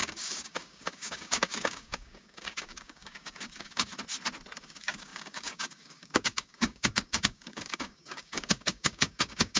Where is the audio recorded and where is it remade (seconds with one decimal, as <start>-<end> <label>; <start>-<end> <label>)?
0.0-3.9 remade; 3.9-4.6 recorded; 4.6-9.6 remade